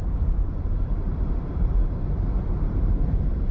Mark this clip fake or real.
fake